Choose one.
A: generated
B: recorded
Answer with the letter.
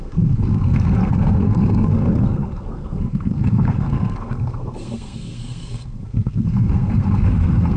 A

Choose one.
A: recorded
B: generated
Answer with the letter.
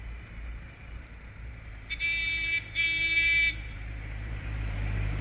B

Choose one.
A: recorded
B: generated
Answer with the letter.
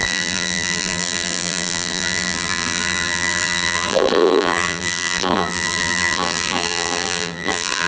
B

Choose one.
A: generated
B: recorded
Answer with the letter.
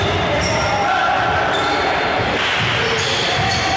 A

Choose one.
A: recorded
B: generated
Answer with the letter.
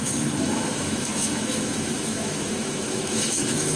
B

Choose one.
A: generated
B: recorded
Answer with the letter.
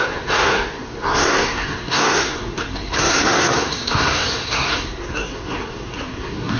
A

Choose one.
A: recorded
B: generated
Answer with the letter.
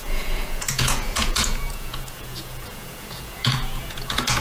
B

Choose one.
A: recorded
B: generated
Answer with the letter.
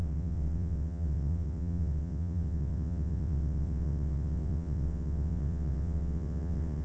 B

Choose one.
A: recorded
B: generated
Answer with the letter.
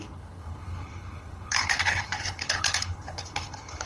B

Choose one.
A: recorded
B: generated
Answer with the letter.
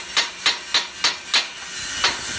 A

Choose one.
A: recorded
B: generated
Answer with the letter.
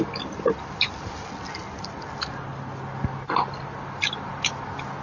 A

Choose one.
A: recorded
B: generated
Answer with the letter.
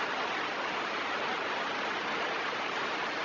A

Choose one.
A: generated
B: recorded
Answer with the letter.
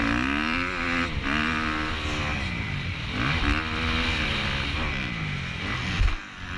B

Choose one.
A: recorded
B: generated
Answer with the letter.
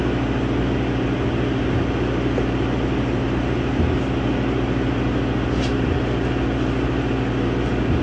A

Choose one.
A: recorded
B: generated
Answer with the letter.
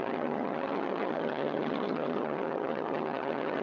B